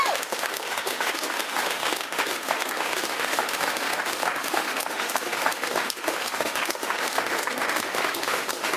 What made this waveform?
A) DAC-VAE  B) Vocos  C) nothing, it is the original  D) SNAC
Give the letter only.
A